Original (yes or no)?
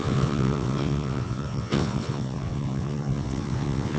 no